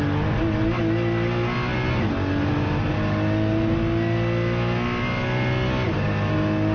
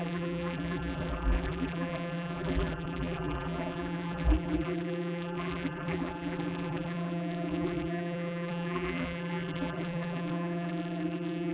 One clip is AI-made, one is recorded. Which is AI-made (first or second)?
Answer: second